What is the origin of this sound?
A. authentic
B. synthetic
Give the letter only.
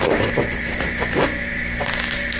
A